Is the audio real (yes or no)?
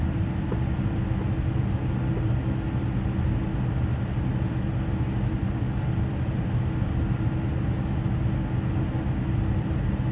yes